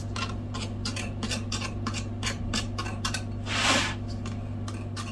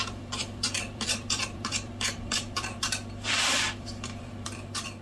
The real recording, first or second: first